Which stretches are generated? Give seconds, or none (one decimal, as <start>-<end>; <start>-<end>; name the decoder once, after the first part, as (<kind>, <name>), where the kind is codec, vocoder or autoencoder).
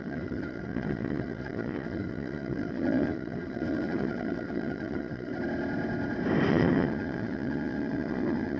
0.0-5.3 (vocoder, Vocos); 6.5-8.6